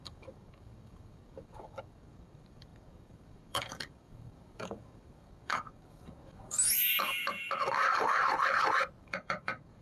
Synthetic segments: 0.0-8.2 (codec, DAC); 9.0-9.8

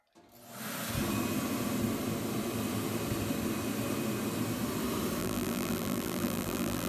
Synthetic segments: 5.2-6.9 (vocoder, BigVGAN v2)

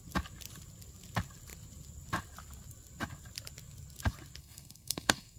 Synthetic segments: 4.4-5.4 (codec, SNAC)

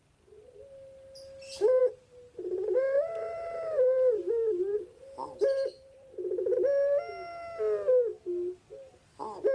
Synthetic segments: 1.8-7.0 (vocoder, BigVGAN v2)

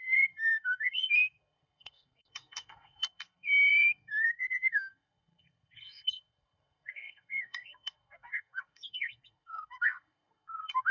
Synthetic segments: 0.0-10.9 (codec, SNAC)

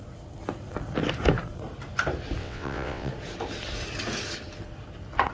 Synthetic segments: 2.4-3.1 (vocoder, WaveNeXt)

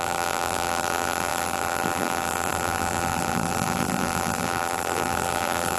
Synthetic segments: 0.0-5.8 (vocoder, BigVGAN v2)